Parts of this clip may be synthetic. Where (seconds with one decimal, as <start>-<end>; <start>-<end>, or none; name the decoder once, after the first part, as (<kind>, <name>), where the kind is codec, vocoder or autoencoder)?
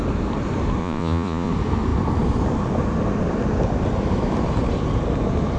0.8-1.5 (vocoder, Vocos)